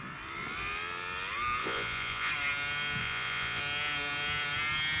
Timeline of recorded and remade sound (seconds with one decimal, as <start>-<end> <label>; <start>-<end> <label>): 0.0-1.6 recorded; 1.6-2.3 remade; 2.3-3.0 recorded; 3.0-3.6 remade; 3.6-5.0 recorded